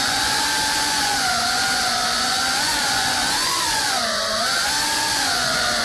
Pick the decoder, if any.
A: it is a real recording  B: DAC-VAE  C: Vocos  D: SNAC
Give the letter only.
C